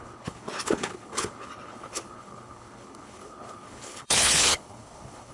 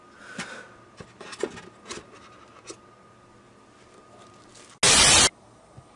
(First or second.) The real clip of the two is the second